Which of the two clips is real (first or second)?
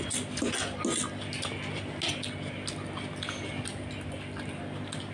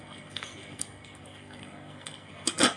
first